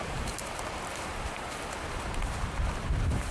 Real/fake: fake